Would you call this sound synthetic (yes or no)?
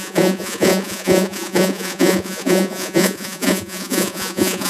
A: yes